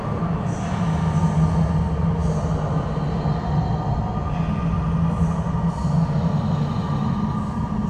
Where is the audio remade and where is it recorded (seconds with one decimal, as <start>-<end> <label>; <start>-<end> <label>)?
0.0-7.9 recorded